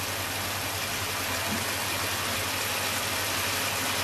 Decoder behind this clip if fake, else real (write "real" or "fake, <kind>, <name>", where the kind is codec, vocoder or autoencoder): real